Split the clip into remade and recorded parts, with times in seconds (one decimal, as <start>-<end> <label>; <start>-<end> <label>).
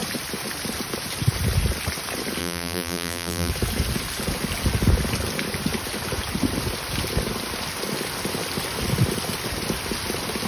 0.0-2.4 recorded; 2.4-3.5 remade; 3.5-10.5 recorded